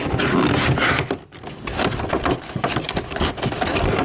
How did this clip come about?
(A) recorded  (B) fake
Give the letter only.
A